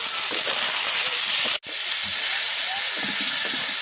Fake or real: real